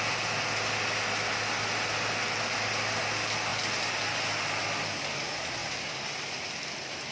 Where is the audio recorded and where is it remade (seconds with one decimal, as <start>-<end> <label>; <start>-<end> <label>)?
0.0-5.6 recorded; 5.6-6.3 remade; 6.3-7.1 recorded